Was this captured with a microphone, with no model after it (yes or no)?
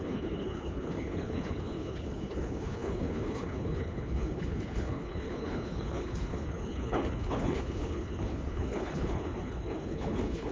no